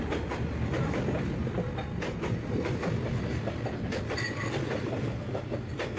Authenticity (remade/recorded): recorded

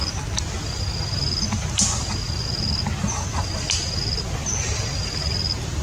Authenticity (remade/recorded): recorded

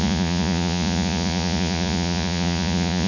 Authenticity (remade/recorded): remade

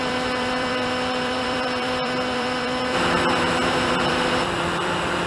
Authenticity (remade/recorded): remade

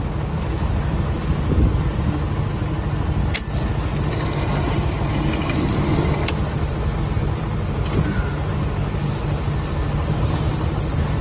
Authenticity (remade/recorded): recorded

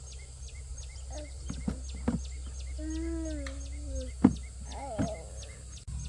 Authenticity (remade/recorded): recorded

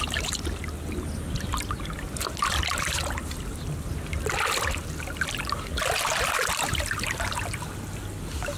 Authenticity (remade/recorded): recorded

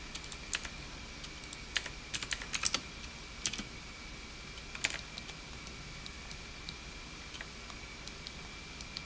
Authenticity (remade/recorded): recorded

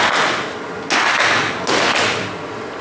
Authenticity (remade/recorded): recorded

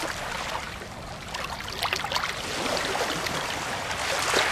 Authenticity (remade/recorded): recorded